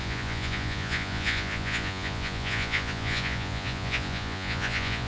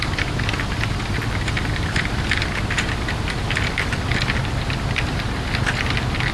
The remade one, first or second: first